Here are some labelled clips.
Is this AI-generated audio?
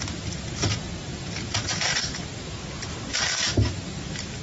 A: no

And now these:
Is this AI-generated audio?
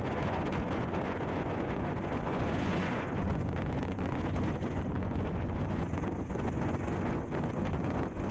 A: yes